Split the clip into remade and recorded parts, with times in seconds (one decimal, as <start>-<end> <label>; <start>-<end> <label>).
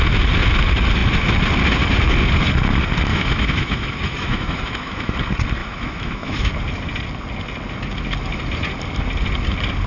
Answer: 0.0-3.1 recorded; 3.1-5.1 remade; 5.1-5.6 recorded; 5.6-6.5 remade; 6.5-9.9 recorded